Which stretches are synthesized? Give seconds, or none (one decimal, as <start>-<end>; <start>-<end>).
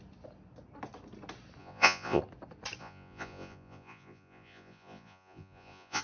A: 1.6-2.2; 2.8-6.0